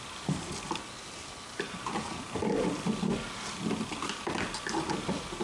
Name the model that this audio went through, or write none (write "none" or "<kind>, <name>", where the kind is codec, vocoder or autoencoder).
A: none